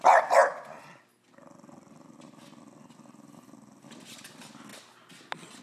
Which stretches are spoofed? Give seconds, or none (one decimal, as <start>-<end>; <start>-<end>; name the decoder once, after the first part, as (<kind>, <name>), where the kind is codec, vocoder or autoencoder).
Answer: none